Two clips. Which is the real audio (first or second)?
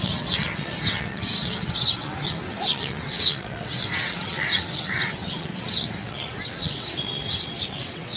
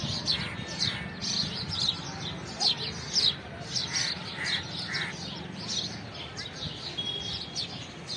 second